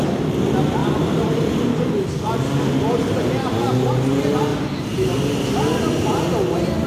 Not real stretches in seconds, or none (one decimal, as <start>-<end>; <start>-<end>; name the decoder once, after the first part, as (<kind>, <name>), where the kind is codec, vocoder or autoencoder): 0.8-1.9 (vocoder, BigVGAN v2)